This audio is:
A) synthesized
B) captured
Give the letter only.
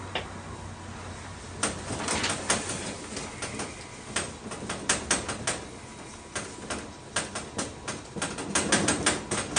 B